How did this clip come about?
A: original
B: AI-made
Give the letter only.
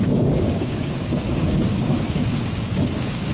B